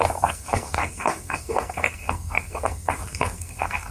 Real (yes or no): no